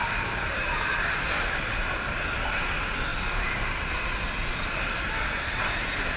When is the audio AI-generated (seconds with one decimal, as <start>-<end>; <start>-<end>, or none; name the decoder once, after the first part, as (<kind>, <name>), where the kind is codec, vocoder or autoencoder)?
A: 0.0-1.7 (vocoder, BigVGAN v2); 3.1-3.9